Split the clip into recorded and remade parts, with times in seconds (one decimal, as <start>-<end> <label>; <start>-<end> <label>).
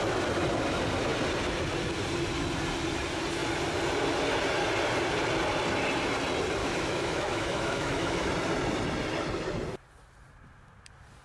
0.0-6.6 recorded; 6.6-8.3 remade; 8.3-11.2 recorded